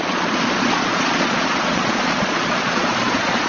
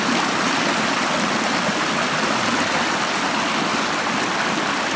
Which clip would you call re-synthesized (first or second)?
first